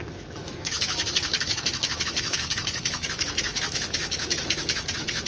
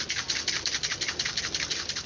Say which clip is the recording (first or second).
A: second